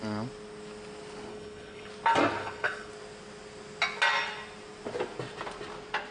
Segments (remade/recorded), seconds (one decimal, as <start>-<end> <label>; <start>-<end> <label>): 0.0-1.3 recorded; 1.3-1.9 remade; 1.9-2.4 recorded; 2.4-2.9 remade; 2.9-6.1 recorded